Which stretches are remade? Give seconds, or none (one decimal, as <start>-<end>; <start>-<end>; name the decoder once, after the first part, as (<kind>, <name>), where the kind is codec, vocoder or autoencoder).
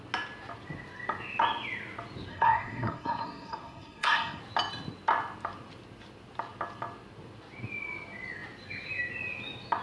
2.3-4.4 (codec, SNAC)